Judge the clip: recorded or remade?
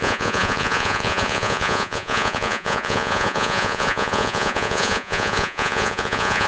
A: remade